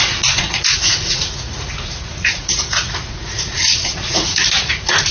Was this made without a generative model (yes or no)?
no